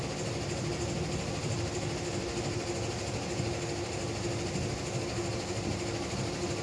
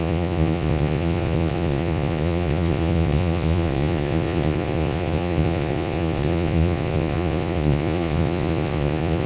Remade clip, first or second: second